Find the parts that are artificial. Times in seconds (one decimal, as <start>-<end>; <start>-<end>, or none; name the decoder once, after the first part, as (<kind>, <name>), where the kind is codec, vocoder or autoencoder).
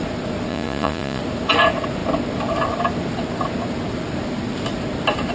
0.5-1.2 (vocoder, Vocos)